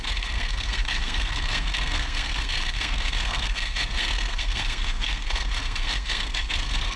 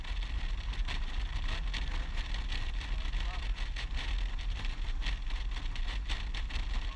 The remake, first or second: first